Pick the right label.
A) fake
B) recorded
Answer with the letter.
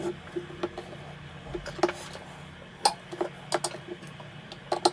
B